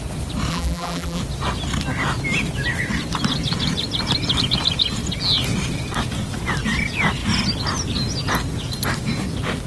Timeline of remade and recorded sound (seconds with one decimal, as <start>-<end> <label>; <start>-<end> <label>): 0.0-0.5 recorded; 0.5-1.2 remade; 1.2-9.7 recorded